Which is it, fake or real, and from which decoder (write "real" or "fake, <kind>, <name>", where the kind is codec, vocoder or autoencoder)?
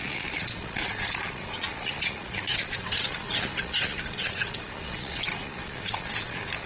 fake, vocoder, Vocos